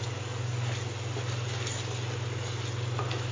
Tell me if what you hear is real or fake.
real